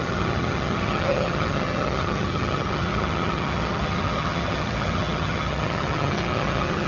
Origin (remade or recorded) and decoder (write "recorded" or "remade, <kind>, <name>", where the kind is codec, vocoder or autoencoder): remade, vocoder, HiFi-GAN